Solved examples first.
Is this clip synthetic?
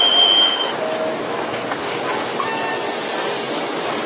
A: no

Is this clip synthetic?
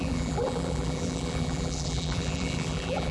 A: yes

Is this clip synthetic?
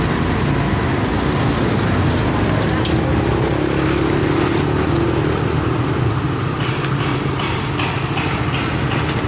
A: no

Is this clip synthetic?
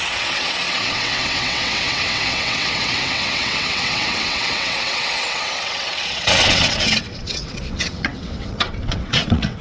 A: yes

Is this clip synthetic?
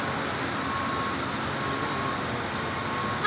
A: no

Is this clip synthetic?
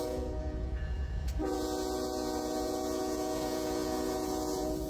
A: yes